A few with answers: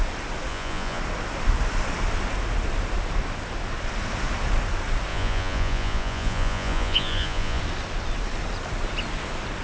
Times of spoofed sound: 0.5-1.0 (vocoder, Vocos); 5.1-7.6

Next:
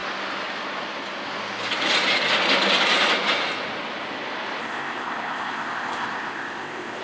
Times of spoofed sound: 4.6-7.0 (codec, ZipCodec)

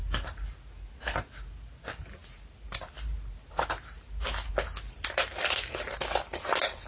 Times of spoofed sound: 2.2-4.5 (vocoder, BigVGAN v2)

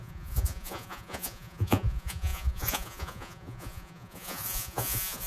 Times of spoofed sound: 0.0-5.3 (vocoder, Vocos)

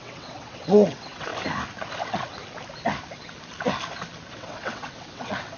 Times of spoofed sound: 0.0-1.3 (vocoder, WaveNeXt); 2.0-2.4; 4.3-5.6